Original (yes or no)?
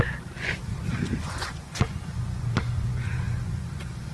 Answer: no